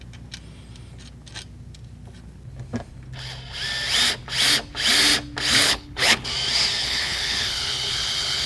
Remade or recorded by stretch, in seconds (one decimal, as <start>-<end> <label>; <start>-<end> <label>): 0.0-5.5 recorded; 5.5-6.3 remade; 6.3-6.8 recorded; 6.8-8.5 remade